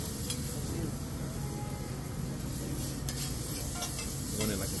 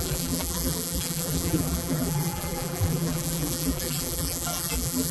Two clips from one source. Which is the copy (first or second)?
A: second